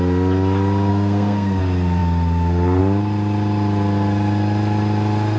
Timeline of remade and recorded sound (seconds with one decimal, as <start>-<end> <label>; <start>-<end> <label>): 0.0-0.9 recorded; 0.9-1.6 remade; 1.6-5.4 recorded